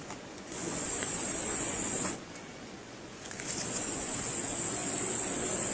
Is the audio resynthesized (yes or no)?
yes